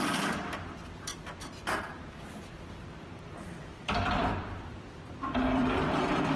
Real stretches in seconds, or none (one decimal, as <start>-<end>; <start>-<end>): 1.1-2.1